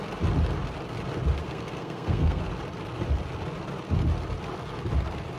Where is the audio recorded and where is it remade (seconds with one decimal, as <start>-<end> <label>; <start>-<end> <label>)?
0.0-1.4 recorded; 1.4-2.4 remade; 2.4-5.4 recorded